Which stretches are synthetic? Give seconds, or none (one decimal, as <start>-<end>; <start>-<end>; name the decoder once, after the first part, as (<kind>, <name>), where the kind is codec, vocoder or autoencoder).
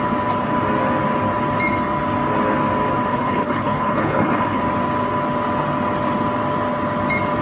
3.1-4.6 (codec, HILCodec)